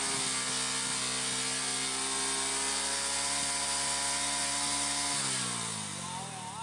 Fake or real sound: real